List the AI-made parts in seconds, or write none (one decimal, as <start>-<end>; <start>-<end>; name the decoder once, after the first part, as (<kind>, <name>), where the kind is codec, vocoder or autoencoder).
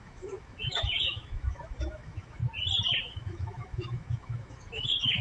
0.0-2.4 (autoencoder, DAC-VAE); 3.0-5.2